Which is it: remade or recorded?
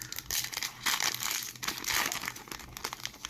recorded